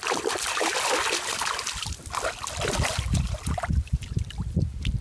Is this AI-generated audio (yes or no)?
no